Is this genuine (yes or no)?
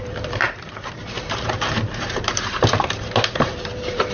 no